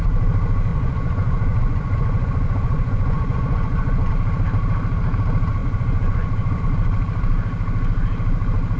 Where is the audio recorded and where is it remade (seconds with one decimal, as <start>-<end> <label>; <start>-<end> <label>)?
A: 0.0-0.7 recorded; 0.7-4.1 remade; 4.1-5.6 recorded; 5.6-6.6 remade; 6.6-8.8 recorded